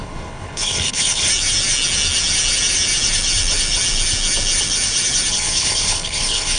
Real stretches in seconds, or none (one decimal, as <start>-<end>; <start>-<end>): 1.3-5.3